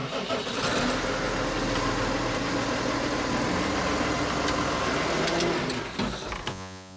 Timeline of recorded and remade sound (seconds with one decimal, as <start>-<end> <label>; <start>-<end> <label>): 0.0-6.5 recorded; 6.5-7.0 remade